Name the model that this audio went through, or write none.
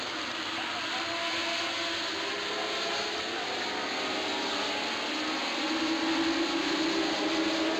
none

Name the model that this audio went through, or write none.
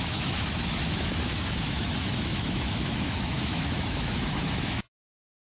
autoencoder, DAC-VAE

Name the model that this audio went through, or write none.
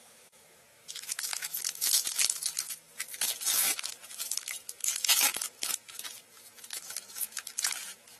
autoencoder, DAC-VAE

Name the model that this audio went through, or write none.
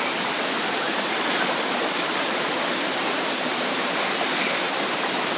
none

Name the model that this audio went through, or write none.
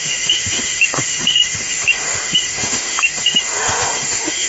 autoencoder, DAC-VAE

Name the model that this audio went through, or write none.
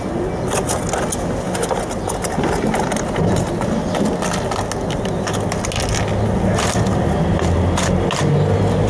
none